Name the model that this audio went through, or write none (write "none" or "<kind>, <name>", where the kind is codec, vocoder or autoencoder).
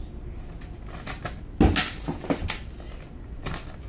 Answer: none